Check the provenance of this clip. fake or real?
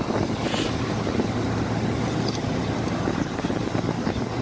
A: real